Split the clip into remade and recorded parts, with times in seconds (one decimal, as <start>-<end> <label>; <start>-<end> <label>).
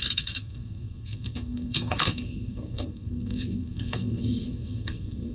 0.0-5.3 remade